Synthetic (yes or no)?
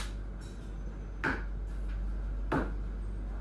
no